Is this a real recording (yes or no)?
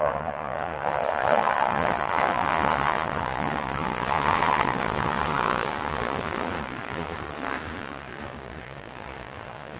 no